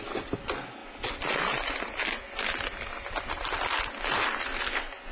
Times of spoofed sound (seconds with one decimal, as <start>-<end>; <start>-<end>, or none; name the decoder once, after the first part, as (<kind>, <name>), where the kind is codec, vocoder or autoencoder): none